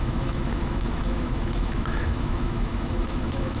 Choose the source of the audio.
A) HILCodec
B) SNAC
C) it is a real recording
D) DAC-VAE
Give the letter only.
D